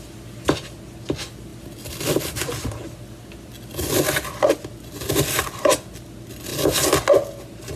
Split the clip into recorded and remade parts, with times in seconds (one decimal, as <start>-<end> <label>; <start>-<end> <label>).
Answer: 0.0-7.8 recorded

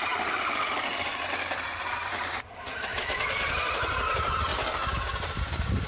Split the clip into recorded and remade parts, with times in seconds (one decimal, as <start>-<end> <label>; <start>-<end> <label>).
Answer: 0.0-1.1 remade; 1.1-1.9 recorded; 1.9-2.9 remade; 2.9-3.5 recorded; 3.5-4.5 remade; 4.5-5.5 recorded; 5.5-5.9 remade